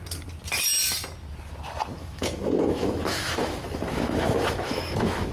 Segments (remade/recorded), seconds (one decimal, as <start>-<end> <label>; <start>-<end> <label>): 0.0-2.0 recorded; 2.0-5.3 remade